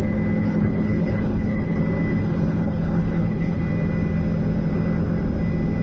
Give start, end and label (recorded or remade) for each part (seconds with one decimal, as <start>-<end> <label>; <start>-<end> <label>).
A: 0.0-0.4 recorded; 0.4-1.8 remade; 1.8-2.2 recorded; 2.2-3.6 remade; 3.6-5.8 recorded